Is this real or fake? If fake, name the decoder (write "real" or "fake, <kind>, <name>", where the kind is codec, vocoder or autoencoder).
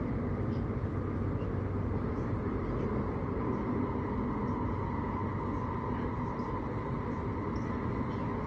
real